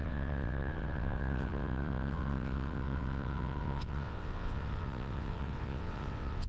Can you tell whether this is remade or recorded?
remade